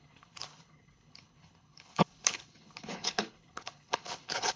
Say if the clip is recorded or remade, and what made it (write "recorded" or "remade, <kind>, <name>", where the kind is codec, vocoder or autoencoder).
remade, codec, HILCodec